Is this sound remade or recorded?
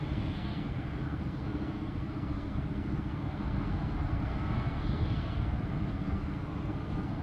remade